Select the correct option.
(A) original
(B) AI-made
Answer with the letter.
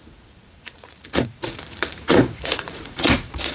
B